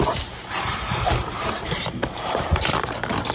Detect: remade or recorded remade